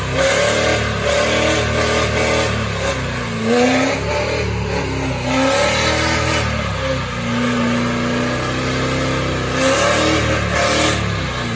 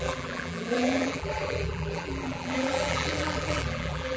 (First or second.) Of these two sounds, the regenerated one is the second